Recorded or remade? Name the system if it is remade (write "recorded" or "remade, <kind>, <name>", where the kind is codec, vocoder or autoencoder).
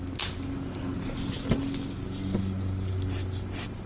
recorded